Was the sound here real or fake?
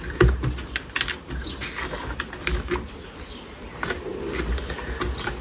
real